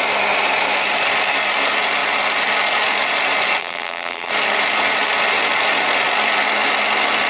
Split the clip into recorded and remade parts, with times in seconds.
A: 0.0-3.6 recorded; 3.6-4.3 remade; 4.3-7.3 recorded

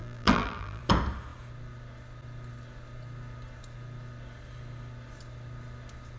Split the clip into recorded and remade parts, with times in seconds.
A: 0.0-0.8 remade; 0.8-6.2 recorded

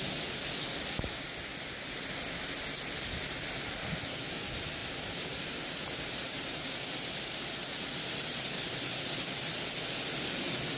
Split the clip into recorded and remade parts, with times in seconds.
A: 0.0-1.5 recorded; 1.5-2.3 remade; 2.3-4.8 recorded; 4.8-9.4 remade; 9.4-10.8 recorded

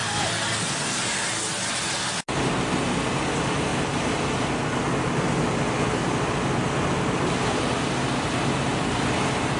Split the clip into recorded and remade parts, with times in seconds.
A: 0.0-9.6 recorded

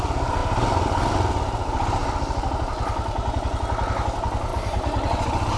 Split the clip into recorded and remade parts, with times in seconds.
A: 0.0-4.5 recorded; 4.5-5.6 remade

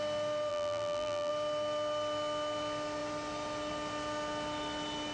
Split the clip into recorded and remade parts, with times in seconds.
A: 0.0-0.5 recorded; 0.5-1.3 remade; 1.3-5.1 recorded

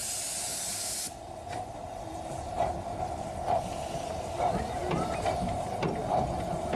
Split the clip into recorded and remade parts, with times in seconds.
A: 0.0-6.8 recorded

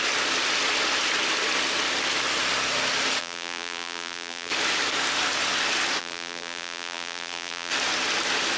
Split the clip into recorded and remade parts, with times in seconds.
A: 0.0-3.2 recorded; 3.2-4.5 remade; 4.5-6.0 recorded; 6.0-7.7 remade; 7.7-8.6 recorded